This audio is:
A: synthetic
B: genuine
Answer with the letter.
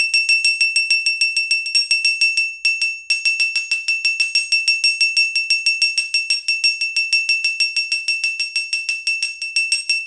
B